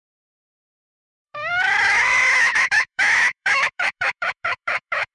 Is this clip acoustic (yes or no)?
no